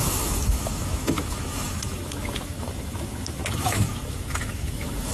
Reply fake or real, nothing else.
fake